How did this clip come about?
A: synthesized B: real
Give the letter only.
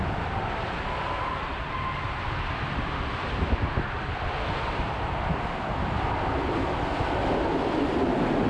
B